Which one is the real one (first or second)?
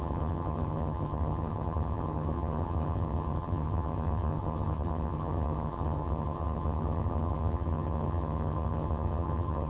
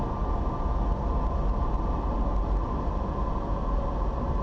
second